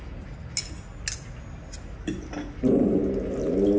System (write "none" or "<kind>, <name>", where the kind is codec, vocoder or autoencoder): none